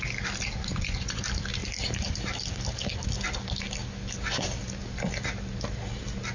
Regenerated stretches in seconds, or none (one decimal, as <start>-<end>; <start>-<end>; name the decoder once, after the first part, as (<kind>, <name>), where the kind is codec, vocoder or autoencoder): 0.6-1.2 (vocoder, Vocos)